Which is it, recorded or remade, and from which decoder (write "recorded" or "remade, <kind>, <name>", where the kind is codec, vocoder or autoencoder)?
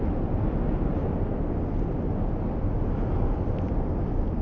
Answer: recorded